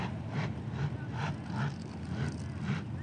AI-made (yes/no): no